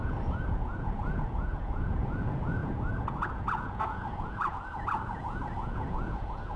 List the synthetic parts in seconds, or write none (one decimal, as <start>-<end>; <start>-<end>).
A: 0.0-6.6

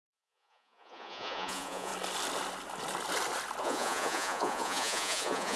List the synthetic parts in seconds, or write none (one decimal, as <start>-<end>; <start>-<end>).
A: 0.0-1.9; 3.6-5.6

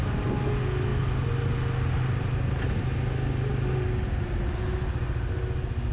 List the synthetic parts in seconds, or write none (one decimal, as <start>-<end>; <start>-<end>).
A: none

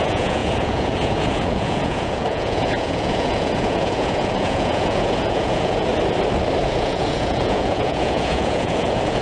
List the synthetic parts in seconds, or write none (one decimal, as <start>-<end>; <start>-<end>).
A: 0.0-5.9; 6.6-9.2

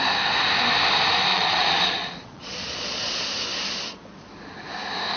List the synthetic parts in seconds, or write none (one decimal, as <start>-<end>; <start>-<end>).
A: 1.3-3.2

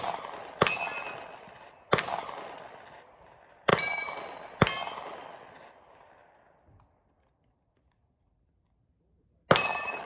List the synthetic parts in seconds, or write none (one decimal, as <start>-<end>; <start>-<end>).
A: none

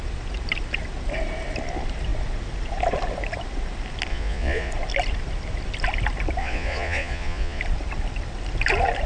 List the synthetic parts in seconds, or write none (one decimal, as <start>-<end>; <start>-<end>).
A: 4.1-4.7; 6.4-7.6